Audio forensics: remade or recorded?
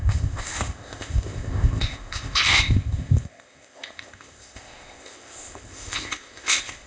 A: remade